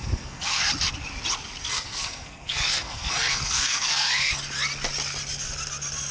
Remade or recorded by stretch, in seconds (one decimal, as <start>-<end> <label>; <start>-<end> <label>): 0.0-0.6 remade; 0.6-1.6 recorded; 1.6-4.3 remade; 4.3-6.1 recorded